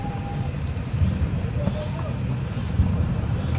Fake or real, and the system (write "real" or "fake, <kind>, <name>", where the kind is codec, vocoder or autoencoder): fake, vocoder, BigVGAN v2